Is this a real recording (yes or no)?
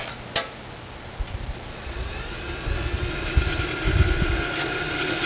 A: yes